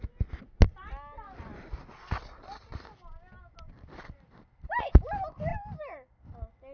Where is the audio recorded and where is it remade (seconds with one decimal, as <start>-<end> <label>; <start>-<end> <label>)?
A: 0.0-1.5 recorded; 1.5-4.8 remade; 4.8-5.5 recorded; 5.5-6.2 remade; 6.2-6.7 recorded